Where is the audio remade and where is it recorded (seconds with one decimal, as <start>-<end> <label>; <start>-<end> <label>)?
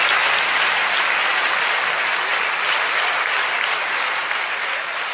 0.0-5.1 recorded